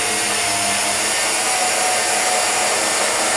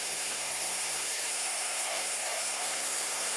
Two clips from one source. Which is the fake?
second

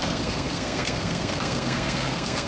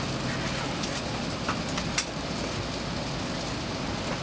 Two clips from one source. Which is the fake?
first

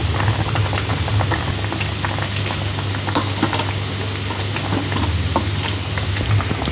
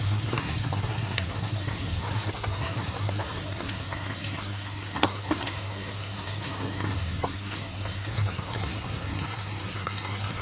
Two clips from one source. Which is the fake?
second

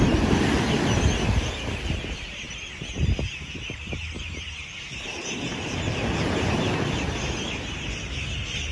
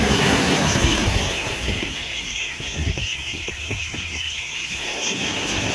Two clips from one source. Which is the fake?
second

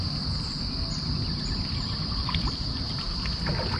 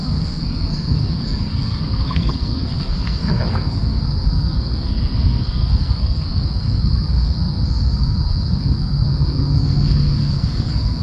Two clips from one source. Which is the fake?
second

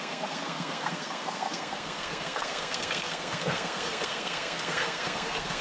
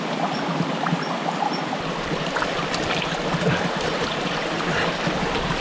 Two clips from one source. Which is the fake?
first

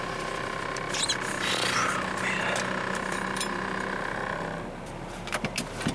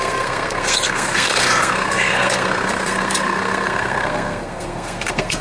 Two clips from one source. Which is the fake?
second